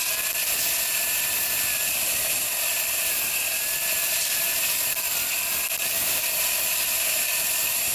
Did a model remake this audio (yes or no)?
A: no